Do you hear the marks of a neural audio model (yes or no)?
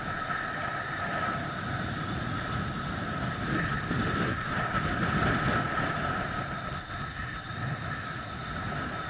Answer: no